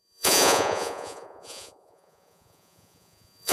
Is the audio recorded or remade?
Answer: remade